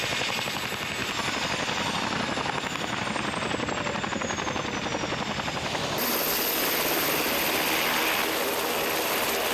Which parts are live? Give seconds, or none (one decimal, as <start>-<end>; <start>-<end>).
0.0-9.5